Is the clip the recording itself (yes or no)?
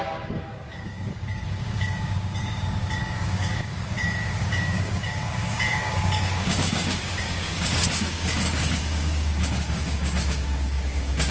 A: no